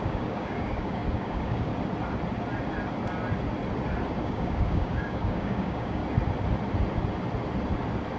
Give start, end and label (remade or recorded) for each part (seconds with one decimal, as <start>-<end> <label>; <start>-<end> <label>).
0.0-1.7 remade; 1.7-4.2 recorded; 4.2-6.0 remade; 6.0-8.2 recorded